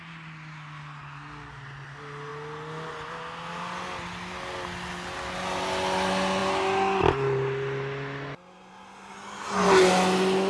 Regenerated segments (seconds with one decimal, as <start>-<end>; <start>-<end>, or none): none